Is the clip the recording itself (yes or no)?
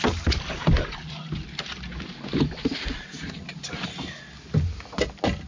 yes